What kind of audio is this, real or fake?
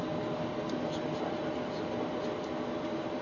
real